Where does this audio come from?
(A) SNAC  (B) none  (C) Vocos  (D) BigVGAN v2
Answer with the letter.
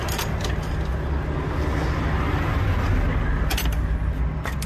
B